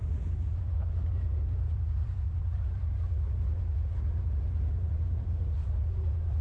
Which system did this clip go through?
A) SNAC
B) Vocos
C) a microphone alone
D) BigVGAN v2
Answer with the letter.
D